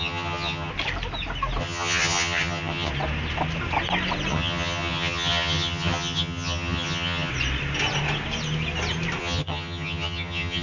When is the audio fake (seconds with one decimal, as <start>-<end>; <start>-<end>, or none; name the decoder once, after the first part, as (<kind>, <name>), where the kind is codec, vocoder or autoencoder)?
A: 0.0-0.7 (vocoder, HiFi-GAN); 1.6-2.9; 4.3-7.3; 9.2-10.6

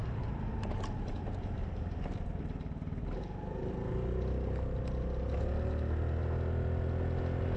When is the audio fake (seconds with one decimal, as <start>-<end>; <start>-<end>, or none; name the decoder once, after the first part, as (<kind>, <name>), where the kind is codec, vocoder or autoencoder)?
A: none

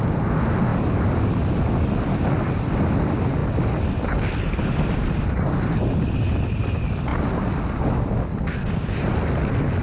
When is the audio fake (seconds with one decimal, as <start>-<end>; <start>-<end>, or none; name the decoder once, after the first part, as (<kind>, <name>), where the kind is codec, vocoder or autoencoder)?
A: none